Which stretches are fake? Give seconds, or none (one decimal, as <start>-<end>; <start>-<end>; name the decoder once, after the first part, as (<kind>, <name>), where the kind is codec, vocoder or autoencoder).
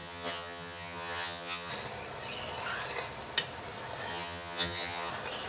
0.0-1.7 (vocoder, HiFi-GAN); 4.1-5.1